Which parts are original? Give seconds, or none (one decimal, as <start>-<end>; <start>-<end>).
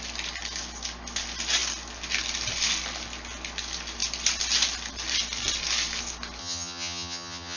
0.0-6.4